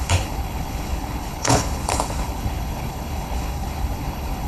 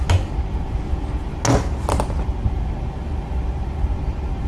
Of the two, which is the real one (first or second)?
second